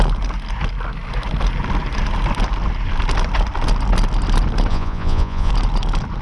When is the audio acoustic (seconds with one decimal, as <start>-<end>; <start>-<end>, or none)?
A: 0.0-4.7; 5.5-6.2